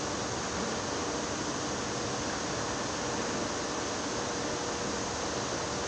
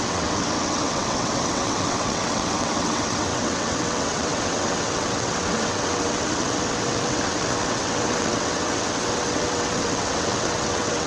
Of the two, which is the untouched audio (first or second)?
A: first